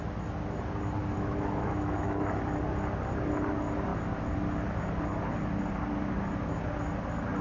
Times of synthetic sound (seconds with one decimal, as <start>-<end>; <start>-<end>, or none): 1.0-2.4